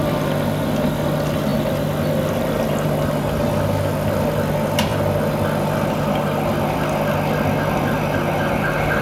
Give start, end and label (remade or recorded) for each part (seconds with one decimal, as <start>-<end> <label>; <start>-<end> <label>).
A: 0.0-9.0 recorded